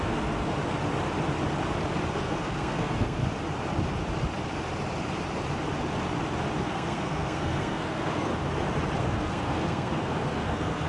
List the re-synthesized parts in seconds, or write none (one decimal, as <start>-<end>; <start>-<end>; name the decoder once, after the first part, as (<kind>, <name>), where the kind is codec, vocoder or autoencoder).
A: 0.0-0.6 (codec, SNAC); 2.1-3.2; 6.6-8.3; 9.0-10.9